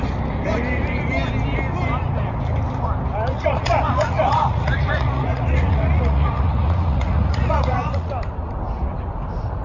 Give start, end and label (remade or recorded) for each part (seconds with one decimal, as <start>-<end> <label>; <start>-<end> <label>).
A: 0.0-3.3 recorded; 3.3-8.1 remade; 8.1-9.6 recorded